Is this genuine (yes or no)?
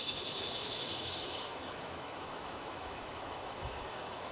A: no